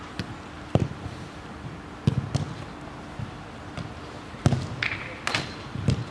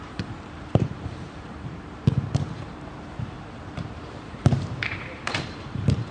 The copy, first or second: second